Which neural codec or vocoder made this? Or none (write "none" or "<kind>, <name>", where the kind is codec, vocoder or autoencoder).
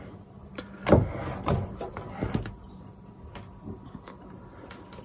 none